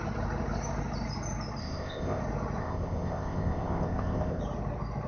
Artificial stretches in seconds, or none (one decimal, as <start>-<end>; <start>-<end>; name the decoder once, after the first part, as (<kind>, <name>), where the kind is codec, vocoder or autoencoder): 1.6-2.2 (codec, ZipCodec); 2.6-4.4